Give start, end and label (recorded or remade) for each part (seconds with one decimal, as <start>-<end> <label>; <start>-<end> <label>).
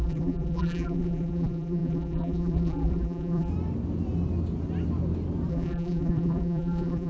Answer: 0.0-3.5 remade; 3.5-5.5 recorded; 5.5-7.1 remade